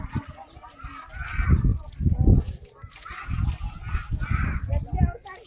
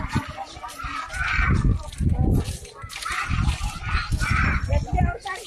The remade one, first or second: second